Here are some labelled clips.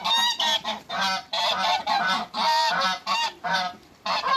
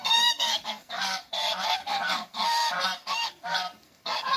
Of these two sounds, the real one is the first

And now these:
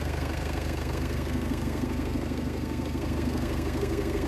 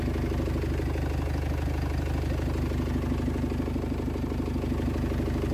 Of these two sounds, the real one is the second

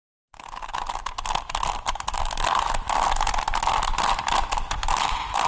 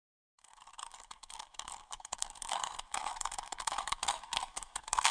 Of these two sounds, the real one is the first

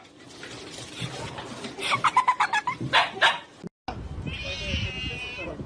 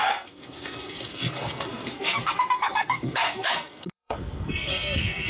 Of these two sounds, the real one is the first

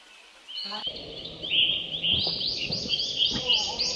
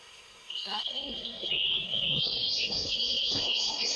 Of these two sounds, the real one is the first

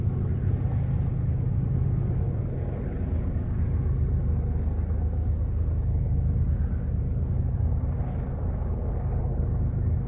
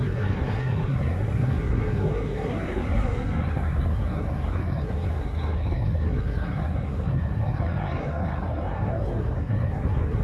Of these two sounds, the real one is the first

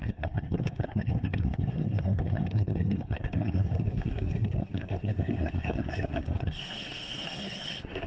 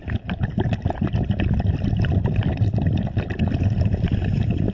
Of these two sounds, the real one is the second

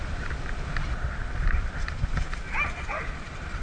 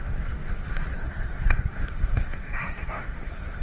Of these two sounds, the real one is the first